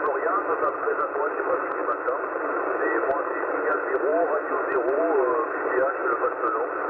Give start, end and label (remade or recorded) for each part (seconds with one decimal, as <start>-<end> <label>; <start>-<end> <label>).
0.0-1.8 recorded; 1.8-2.6 remade; 2.6-4.1 recorded; 4.1-5.0 remade; 5.0-6.9 recorded